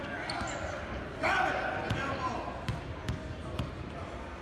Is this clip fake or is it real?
real